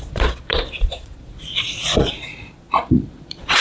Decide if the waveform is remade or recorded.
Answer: remade